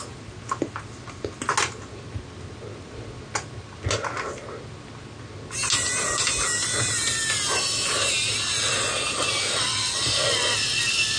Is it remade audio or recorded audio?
recorded